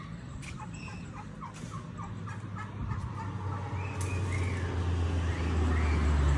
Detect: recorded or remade recorded